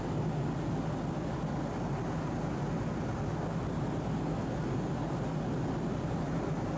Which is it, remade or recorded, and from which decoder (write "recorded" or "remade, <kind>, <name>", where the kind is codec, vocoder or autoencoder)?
recorded